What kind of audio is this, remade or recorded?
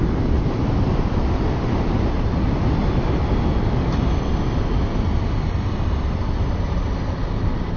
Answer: recorded